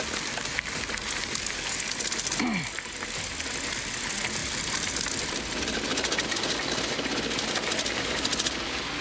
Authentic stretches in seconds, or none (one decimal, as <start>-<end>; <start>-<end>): 0.0-4.4; 5.6-9.0